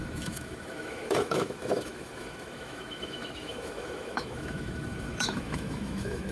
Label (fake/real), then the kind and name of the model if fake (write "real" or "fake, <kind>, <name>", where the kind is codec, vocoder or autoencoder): fake, autoencoder, DAC-VAE